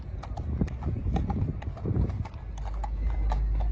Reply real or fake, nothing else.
real